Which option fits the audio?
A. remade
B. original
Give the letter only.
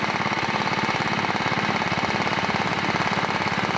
B